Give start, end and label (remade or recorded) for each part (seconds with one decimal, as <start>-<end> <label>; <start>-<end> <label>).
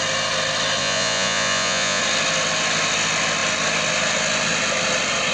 0.0-0.8 recorded; 0.8-2.0 remade; 2.0-5.3 recorded